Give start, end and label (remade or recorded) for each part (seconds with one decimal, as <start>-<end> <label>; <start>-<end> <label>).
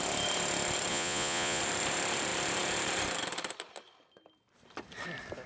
0.0-0.9 recorded; 0.9-1.6 remade; 1.6-5.5 recorded